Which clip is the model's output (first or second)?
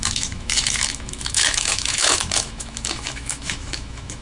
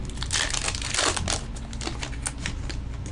first